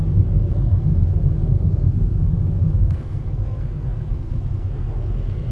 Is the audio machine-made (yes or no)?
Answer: yes